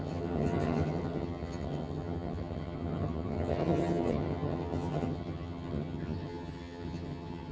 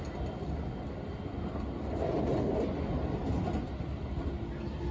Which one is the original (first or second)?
second